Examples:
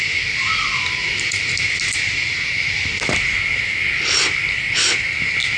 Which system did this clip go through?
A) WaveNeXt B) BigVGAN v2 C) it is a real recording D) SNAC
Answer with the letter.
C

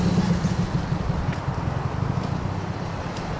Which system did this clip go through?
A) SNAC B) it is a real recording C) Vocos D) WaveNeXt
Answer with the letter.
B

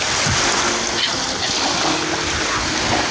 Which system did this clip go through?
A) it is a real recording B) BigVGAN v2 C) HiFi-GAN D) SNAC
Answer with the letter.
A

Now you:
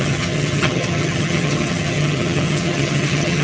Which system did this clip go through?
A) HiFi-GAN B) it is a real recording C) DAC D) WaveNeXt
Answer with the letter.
A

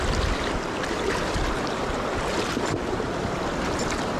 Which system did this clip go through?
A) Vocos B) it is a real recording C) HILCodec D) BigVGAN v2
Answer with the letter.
B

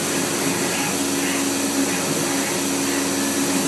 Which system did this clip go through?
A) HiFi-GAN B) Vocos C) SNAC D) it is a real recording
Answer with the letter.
D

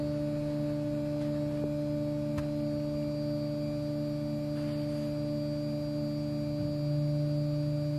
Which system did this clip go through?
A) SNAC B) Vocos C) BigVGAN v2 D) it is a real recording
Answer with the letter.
D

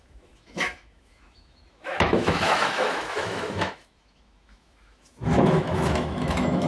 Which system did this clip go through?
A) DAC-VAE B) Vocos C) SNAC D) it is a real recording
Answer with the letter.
A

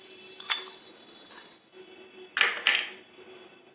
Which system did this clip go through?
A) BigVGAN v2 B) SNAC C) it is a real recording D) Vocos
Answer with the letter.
C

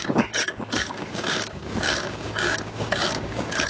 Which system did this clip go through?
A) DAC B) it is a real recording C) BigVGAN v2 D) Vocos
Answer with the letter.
A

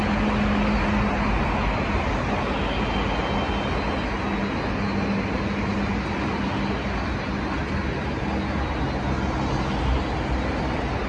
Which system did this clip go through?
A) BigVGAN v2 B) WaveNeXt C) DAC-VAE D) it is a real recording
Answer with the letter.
D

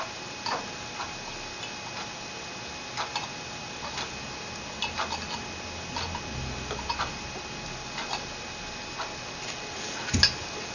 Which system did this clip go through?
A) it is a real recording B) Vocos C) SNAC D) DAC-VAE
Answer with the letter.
A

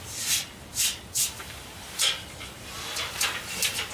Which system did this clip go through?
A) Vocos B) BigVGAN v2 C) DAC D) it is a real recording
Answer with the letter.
B